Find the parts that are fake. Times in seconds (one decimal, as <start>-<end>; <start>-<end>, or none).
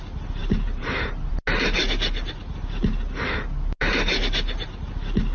0.4-1.3